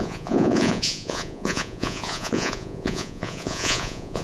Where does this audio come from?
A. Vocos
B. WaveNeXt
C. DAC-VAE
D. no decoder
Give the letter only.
A